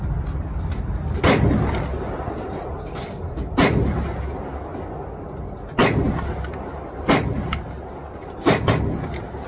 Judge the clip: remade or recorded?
recorded